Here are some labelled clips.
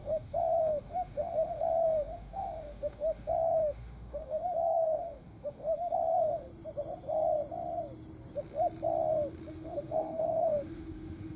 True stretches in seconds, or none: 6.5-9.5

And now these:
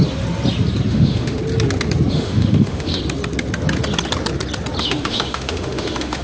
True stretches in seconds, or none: 0.0-0.9; 1.4-2.1; 3.0-4.8